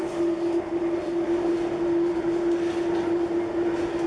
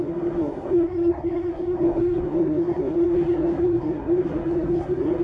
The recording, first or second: first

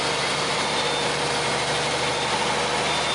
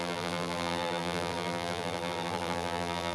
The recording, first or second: first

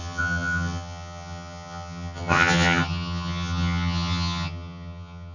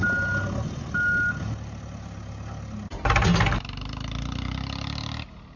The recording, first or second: second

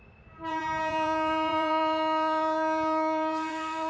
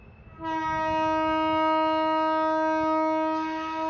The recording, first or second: second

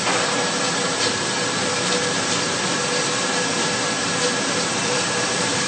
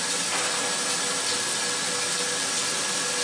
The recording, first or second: second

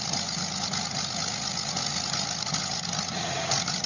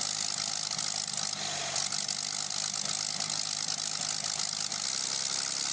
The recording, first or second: second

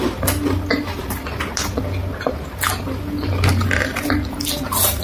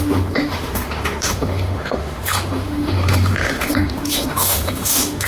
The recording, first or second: first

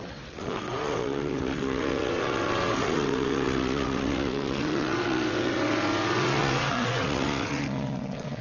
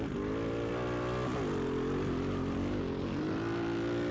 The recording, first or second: second